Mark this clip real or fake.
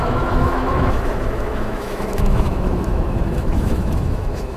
fake